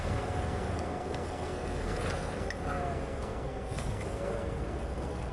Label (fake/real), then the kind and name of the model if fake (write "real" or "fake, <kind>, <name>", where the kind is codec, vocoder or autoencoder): fake, codec, SNAC